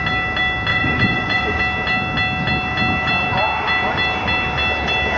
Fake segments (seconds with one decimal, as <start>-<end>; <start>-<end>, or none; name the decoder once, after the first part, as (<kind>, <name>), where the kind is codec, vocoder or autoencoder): 0.7-1.6 (vocoder, Vocos)